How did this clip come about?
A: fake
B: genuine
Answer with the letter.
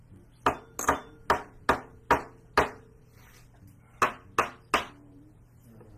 B